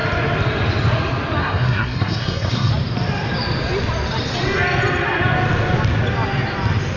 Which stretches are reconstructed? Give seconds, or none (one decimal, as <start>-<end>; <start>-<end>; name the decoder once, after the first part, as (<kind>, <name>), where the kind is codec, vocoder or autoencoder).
1.4-2.7 (codec, SNAC)